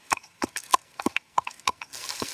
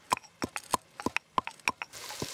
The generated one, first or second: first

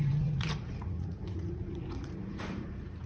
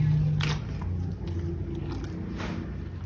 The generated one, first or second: first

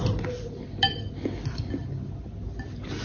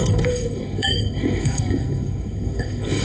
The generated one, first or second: second